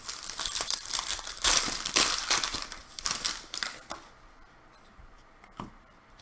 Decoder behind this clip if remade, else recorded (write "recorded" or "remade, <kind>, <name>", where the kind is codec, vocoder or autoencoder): remade, vocoder, BigVGAN v2